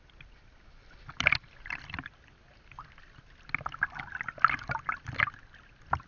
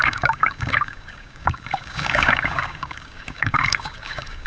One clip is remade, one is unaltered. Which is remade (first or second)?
second